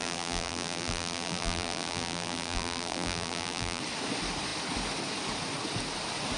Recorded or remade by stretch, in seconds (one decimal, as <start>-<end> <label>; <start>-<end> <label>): 0.0-3.8 remade; 3.8-6.4 recorded